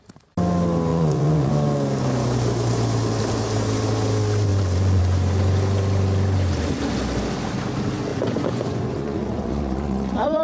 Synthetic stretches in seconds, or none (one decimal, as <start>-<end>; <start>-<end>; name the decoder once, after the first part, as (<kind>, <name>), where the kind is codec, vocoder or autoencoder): 0.9-1.5 (vocoder, Vocos); 4.5-5.0; 8.1-10.4